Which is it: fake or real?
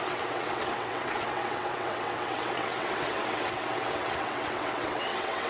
fake